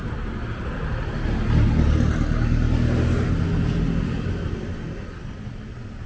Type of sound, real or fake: real